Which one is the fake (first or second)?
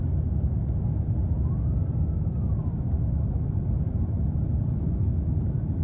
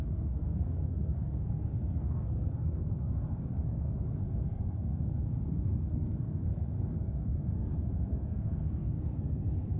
second